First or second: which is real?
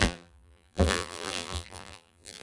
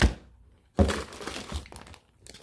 second